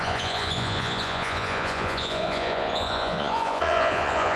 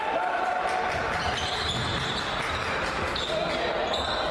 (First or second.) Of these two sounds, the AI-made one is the first